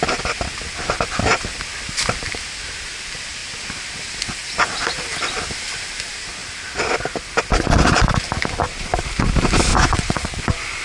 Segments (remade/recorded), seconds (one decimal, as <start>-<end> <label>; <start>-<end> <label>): 0.0-9.7 recorded; 9.7-10.8 remade

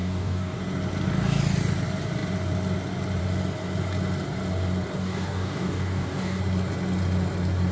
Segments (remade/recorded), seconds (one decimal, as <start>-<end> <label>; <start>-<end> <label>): 0.0-0.6 remade; 0.6-5.0 recorded; 5.0-6.4 remade; 6.4-7.7 recorded

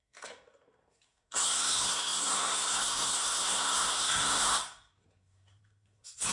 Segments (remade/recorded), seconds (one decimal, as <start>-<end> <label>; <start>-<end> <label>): 0.0-6.3 remade

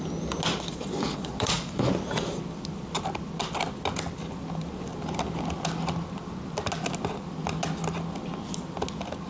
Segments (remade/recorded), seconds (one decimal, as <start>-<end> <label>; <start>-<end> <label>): 0.0-0.5 recorded; 0.5-1.8 remade; 1.8-9.3 recorded

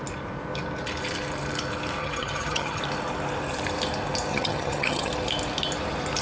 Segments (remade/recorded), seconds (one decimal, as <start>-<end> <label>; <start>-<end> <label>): 0.0-2.0 recorded; 2.0-2.8 remade; 2.8-4.3 recorded; 4.3-5.1 remade; 5.1-6.2 recorded

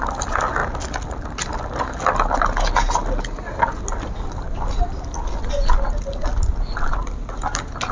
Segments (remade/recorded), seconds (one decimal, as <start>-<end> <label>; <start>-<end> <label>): 0.0-7.9 recorded